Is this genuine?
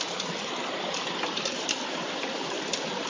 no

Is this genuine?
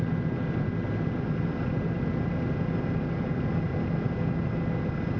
yes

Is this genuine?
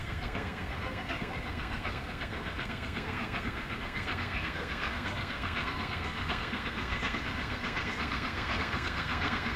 no